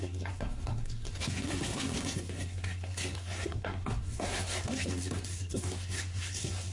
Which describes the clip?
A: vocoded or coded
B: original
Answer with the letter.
A